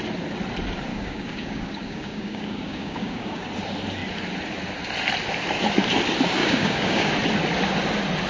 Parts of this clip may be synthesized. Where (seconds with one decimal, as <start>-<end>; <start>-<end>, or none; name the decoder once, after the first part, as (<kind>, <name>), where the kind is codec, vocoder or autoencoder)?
0.9-3.5 (codec, DAC); 6.4-7.1